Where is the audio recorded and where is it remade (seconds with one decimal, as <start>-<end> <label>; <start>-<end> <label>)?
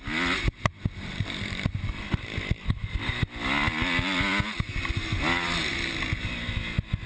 0.0-7.1 recorded